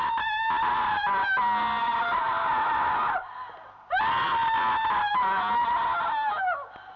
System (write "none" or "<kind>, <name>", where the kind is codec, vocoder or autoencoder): none